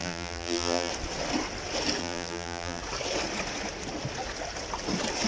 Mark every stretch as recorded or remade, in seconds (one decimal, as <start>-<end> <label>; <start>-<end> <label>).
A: 0.0-0.9 remade; 0.9-2.0 recorded; 2.0-2.8 remade; 2.8-5.3 recorded